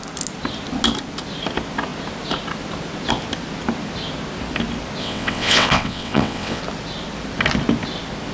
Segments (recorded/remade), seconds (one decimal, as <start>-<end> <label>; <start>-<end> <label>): 0.0-5.0 recorded; 5.0-6.6 remade; 6.6-8.3 recorded